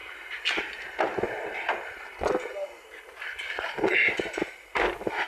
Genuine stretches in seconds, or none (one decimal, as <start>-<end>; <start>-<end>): 0.0-5.3